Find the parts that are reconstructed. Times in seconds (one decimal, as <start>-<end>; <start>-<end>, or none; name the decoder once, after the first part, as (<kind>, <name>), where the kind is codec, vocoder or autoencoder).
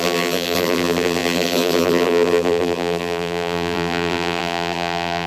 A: 0.0-5.3 (vocoder, BigVGAN v2)